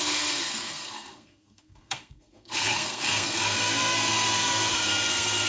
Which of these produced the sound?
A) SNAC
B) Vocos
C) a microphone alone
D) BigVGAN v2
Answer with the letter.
A